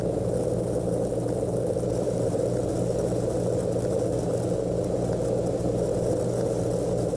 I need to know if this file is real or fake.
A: real